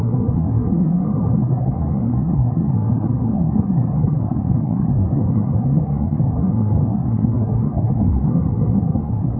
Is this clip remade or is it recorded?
remade